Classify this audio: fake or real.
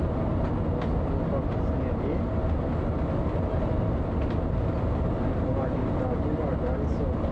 real